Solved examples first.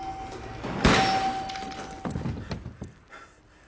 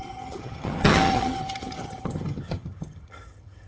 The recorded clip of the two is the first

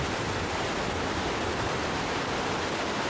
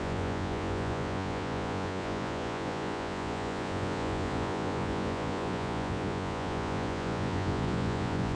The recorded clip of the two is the first